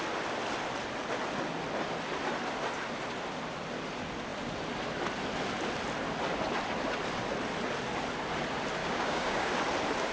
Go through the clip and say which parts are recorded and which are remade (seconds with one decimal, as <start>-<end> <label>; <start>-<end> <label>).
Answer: 0.0-8.8 recorded; 8.8-9.5 remade; 9.5-10.1 recorded

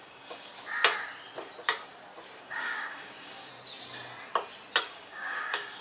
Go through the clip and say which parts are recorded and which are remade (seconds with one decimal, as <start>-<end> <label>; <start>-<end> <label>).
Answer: 0.0-0.5 remade; 0.5-2.4 recorded; 2.4-3.5 remade; 3.5-4.8 recorded; 4.8-5.8 remade